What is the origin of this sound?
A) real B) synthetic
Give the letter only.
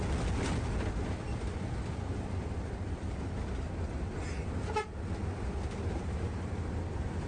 A